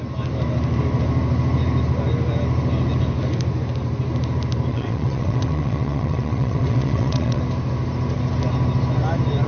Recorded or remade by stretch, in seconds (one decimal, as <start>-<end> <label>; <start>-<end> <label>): 0.0-4.7 recorded; 4.7-7.4 remade; 7.4-9.5 recorded